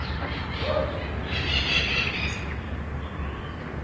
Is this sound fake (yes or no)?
no